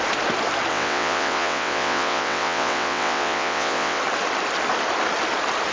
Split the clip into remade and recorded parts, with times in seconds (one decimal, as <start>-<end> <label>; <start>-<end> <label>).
0.0-0.7 recorded; 0.7-4.0 remade; 4.0-5.7 recorded